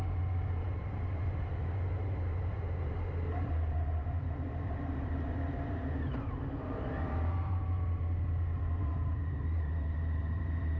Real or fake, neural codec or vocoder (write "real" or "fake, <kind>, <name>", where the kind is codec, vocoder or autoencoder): fake, vocoder, BigVGAN v2